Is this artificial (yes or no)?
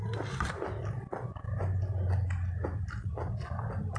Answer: no